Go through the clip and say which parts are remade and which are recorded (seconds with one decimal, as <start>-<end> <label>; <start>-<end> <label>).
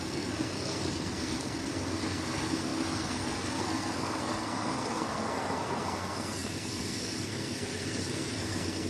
0.0-8.9 remade